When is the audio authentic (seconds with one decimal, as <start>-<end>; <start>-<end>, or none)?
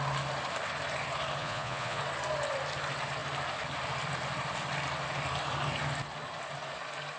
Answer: 0.0-1.4; 2.0-7.2